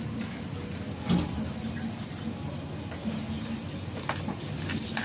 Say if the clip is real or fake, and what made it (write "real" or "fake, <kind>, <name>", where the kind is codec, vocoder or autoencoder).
real